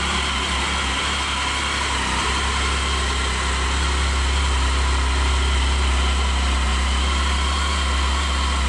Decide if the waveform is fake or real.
real